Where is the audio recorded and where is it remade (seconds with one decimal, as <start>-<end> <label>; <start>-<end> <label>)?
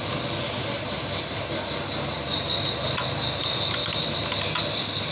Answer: 0.0-0.6 recorded; 0.6-1.6 remade; 1.6-3.4 recorded; 3.4-4.2 remade; 4.2-5.1 recorded